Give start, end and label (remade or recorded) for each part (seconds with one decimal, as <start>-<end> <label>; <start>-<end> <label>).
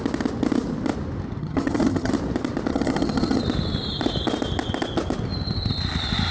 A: 0.0-1.4 recorded; 1.4-2.1 remade; 2.1-2.7 recorded; 2.7-3.4 remade; 3.4-6.3 recorded